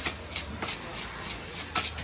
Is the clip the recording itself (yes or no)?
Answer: yes